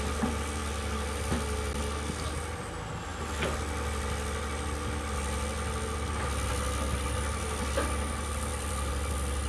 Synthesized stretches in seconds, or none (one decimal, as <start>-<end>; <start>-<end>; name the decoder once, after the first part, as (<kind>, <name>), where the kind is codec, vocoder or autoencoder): 8.5-9.1 (vocoder, BigVGAN v2)